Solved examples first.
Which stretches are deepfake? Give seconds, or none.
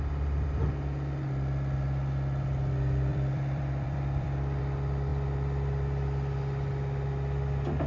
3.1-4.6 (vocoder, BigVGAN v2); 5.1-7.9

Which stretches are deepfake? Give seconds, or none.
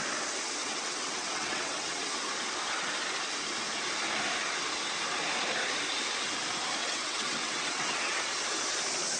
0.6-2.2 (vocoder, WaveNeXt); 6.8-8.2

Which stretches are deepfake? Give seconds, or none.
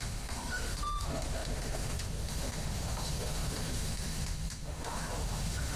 0.0-5.8 (autoencoder, DAC-VAE)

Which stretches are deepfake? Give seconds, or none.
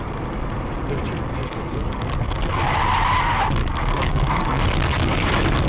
1.4-2.5 (codec, DAC); 3.6-5.3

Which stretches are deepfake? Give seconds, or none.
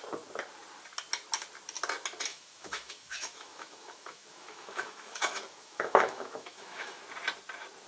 2.3-7.0 (autoencoder, DAC-VAE)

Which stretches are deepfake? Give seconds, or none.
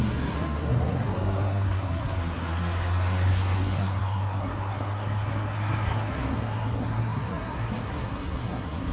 0.0-8.9 (codec, SNAC)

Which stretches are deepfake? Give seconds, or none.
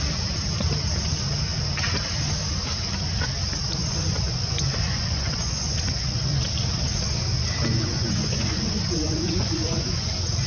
3.8-6.4 (vocoder, Vocos); 7.7-10.1